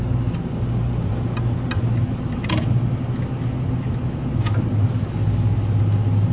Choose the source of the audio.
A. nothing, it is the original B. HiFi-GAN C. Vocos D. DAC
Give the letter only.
A